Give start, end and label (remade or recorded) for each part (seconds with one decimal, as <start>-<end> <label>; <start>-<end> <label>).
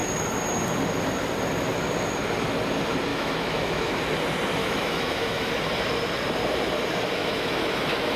0.0-3.1 recorded; 3.1-4.0 remade; 4.0-4.6 recorded; 4.6-5.5 remade; 5.5-7.2 recorded; 7.2-8.2 remade